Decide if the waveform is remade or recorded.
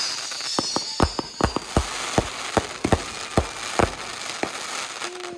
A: recorded